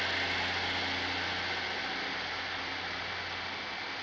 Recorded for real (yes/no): yes